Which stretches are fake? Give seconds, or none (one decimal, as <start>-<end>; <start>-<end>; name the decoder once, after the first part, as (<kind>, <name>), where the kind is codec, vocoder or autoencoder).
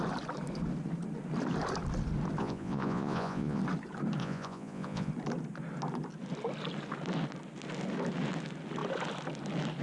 2.4-3.6 (vocoder, Vocos); 4.2-5.1